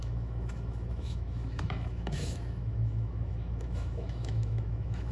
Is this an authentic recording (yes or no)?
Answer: no